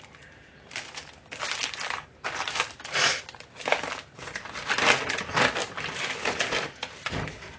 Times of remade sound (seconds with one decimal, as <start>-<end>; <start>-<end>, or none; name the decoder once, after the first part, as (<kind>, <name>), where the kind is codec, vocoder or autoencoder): 5.6-7.1 (vocoder, BigVGAN v2)